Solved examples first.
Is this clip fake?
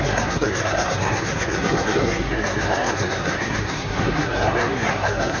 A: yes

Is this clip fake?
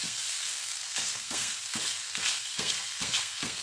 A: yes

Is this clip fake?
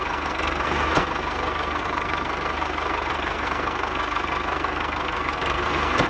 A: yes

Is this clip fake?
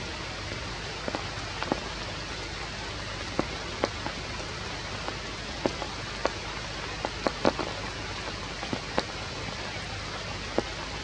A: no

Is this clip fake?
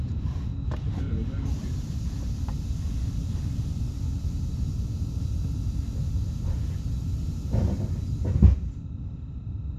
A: no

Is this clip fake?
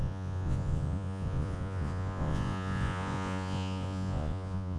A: yes